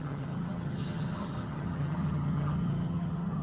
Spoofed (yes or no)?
yes